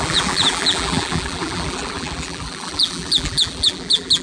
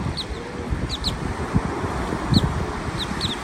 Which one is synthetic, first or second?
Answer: first